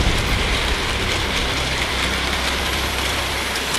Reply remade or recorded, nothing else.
remade